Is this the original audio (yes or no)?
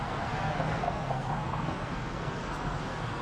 no